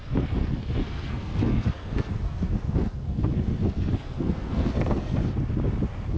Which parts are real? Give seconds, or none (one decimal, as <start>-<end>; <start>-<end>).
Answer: 5.2-6.2